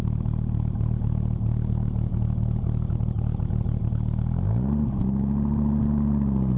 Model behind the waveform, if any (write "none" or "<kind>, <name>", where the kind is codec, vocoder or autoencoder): none